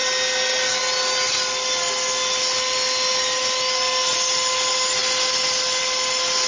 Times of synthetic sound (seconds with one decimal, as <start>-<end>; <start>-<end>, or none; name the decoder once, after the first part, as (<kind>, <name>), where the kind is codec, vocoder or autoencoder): none